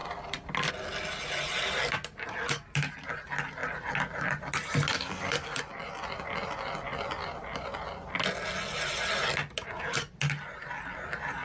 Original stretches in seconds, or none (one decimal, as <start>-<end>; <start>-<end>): 0.0-11.4